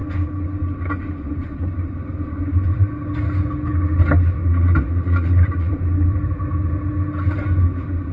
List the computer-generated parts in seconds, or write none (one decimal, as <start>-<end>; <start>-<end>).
4.4-5.7

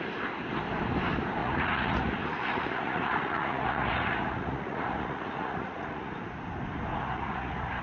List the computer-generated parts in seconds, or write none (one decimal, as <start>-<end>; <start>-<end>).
1.4-6.1; 6.9-7.8